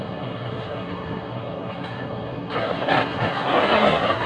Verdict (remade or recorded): remade